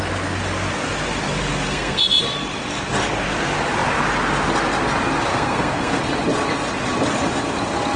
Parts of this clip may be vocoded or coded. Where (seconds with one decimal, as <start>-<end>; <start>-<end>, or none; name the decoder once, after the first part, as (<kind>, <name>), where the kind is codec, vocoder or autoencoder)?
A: 1.5-2.0 (codec, SNAC); 5.3-6.0